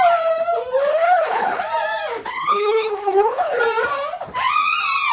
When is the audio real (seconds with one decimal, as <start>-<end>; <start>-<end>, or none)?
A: 0.0-0.9; 1.6-2.3; 3.6-5.1